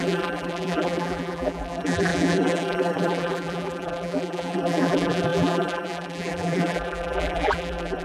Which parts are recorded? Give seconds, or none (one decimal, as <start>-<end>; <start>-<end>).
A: none